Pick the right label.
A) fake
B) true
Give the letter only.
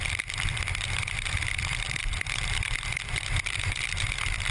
A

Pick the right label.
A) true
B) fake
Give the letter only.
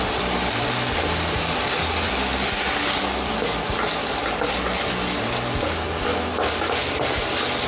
A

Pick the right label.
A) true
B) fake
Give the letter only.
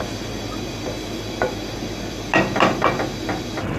A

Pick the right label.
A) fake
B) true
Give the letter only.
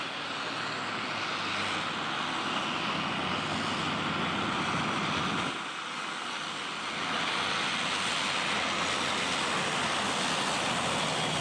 B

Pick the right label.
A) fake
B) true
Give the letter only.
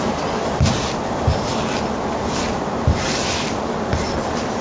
B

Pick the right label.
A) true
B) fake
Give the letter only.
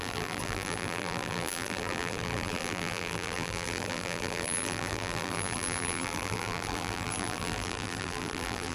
B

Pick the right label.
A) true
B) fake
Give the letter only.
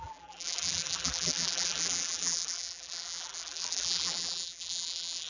B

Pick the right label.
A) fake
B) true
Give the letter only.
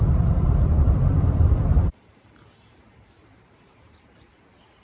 A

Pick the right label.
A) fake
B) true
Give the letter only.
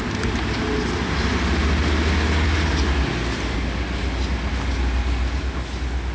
B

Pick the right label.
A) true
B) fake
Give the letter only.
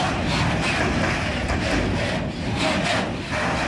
A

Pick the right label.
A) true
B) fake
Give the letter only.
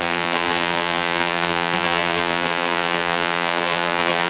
B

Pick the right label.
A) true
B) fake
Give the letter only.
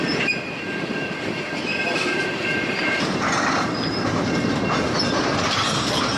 B